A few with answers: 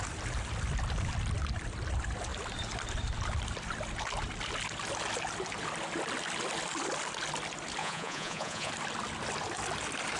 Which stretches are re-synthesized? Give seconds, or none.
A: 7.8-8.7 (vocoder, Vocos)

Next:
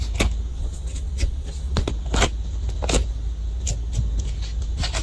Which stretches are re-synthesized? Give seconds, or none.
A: 0.5-1.9 (vocoder, Vocos)

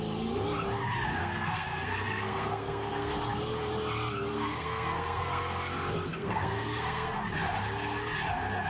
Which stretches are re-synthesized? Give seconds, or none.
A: 1.2-3.1 (codec, SNAC); 4.3-5.4; 6.1-7.2

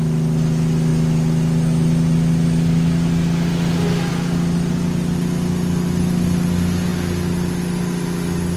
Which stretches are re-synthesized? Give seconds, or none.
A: none